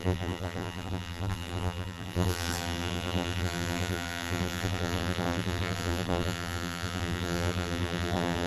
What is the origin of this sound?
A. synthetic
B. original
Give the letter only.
A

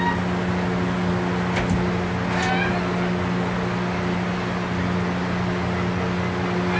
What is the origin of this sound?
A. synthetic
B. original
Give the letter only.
B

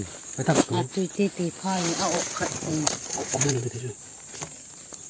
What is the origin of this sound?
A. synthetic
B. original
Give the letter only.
A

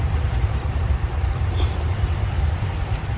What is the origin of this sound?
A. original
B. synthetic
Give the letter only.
B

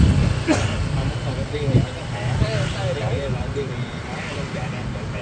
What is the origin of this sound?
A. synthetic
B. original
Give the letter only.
B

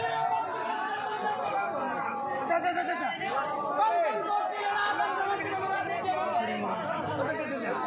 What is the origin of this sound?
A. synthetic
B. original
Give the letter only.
B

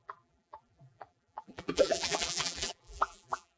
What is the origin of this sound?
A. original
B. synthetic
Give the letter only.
B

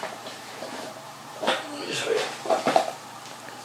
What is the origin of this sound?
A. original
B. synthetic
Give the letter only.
B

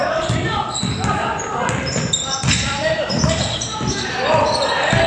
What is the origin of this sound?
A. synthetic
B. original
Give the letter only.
B